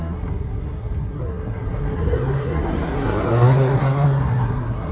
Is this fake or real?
fake